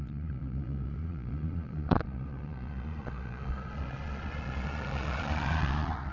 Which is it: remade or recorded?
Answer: remade